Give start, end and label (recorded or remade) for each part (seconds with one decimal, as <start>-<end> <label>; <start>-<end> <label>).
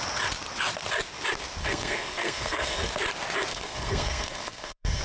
0.0-1.6 recorded; 1.6-2.9 remade; 2.9-3.5 recorded; 3.5-5.0 remade